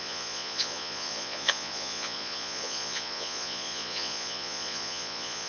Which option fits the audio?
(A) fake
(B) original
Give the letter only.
A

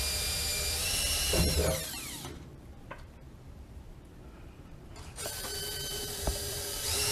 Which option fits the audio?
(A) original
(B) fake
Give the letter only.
B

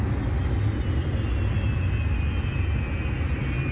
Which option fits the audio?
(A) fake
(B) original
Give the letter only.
B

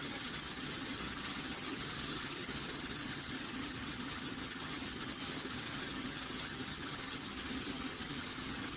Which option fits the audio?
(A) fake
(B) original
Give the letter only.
A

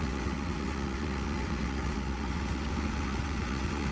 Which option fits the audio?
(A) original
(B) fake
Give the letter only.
B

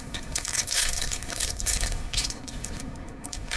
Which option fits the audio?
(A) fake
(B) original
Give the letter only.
A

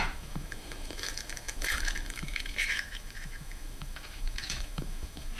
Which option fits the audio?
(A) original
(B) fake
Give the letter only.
B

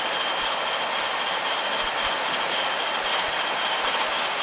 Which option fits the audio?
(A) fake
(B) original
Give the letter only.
B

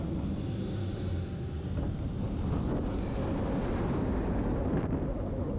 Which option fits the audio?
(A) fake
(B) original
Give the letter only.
B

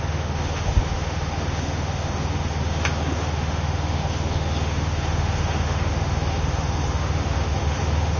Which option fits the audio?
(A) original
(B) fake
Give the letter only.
B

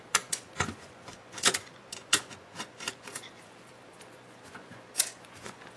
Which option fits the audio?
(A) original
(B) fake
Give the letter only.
B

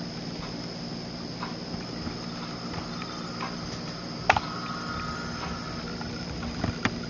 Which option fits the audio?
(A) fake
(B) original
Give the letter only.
B